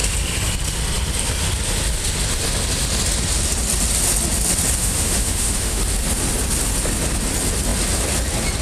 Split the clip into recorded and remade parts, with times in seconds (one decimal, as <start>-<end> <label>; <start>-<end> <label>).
0.0-4.8 recorded; 4.8-5.8 remade; 5.8-8.6 recorded